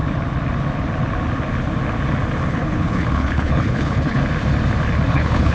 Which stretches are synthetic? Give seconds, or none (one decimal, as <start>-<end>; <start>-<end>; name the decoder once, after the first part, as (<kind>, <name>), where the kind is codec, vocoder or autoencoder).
2.5-4.2 (codec, HILCodec); 5.1-5.5